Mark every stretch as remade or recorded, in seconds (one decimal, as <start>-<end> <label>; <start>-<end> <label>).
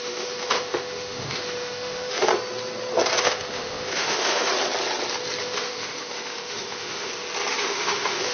0.0-2.3 remade; 2.3-3.2 recorded; 3.2-4.5 remade; 4.5-5.4 recorded; 5.4-7.1 remade; 7.1-7.6 recorded; 7.6-8.3 remade